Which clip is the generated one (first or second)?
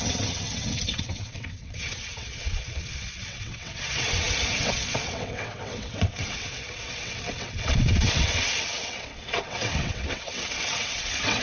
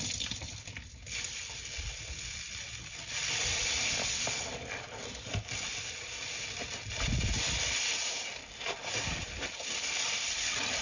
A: first